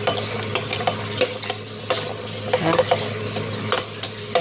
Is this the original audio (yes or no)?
yes